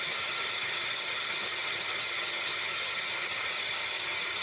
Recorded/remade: remade